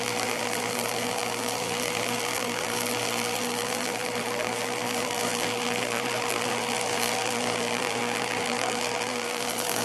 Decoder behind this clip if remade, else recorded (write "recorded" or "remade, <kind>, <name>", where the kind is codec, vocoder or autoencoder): remade, vocoder, BigVGAN v2